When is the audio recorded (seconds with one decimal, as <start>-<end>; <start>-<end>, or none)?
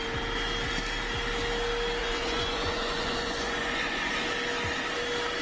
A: 0.0-2.0; 4.1-5.4